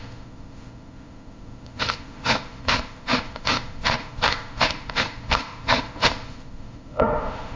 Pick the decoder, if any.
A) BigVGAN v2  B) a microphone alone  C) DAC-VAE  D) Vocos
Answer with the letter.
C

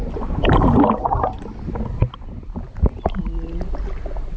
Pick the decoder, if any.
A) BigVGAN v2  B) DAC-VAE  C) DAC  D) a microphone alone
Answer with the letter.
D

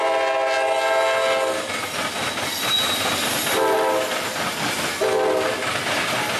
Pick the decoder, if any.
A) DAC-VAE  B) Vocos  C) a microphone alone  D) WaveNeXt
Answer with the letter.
C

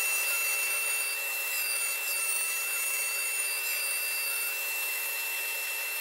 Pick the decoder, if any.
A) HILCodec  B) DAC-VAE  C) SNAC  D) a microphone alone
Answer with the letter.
B